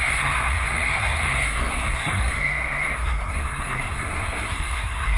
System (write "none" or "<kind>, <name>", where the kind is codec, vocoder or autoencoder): codec, SNAC